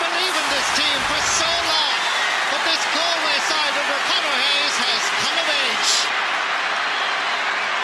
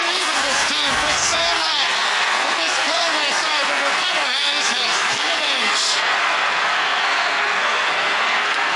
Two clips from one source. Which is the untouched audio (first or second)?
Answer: first